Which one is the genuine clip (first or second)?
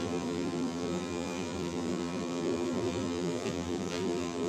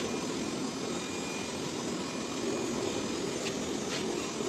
second